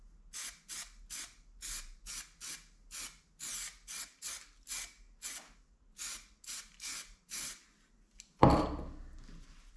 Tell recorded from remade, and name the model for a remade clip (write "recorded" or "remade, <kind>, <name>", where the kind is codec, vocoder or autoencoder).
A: recorded